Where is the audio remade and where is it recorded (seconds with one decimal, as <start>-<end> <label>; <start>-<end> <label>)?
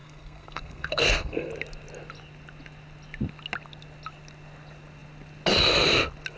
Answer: 0.0-1.5 remade; 1.5-6.4 recorded